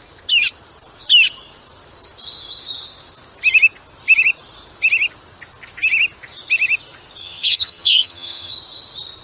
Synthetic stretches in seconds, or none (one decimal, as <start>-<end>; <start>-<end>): 7.2-8.5